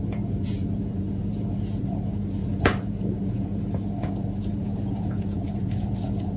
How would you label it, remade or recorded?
remade